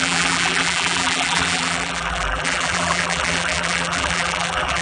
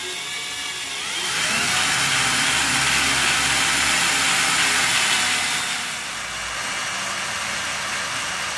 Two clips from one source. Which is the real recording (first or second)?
second